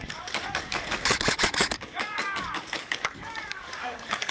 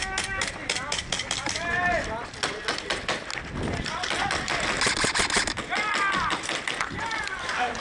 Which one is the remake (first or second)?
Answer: first